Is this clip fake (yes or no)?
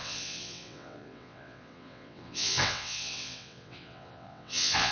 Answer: yes